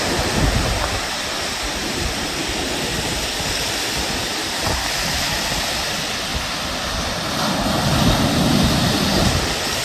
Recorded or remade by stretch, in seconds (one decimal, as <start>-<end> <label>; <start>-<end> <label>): 0.0-6.3 remade; 6.3-7.1 recorded; 7.1-9.8 remade